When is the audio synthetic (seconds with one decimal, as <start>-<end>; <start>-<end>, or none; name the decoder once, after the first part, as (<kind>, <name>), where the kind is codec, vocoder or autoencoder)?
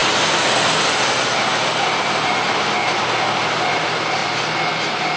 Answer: 0.0-4.2 (vocoder, BigVGAN v2)